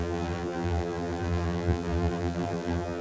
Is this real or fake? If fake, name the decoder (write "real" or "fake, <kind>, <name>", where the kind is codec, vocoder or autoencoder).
fake, vocoder, BigVGAN v2